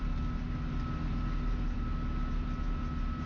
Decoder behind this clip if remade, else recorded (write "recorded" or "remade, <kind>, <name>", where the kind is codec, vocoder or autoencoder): recorded